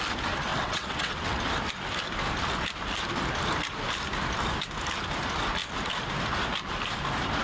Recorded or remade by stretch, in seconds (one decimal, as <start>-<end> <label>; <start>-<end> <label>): 0.0-0.5 recorded; 0.5-1.4 remade; 1.4-7.4 recorded